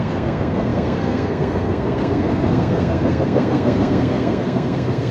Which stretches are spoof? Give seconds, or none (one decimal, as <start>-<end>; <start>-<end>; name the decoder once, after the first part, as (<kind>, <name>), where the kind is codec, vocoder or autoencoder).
0.0-5.1 (codec, SNAC)